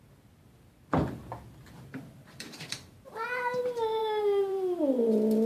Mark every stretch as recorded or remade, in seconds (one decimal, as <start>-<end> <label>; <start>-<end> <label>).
0.0-2.2 recorded; 2.2-3.6 remade; 3.6-4.0 recorded; 4.0-4.8 remade; 4.8-5.5 recorded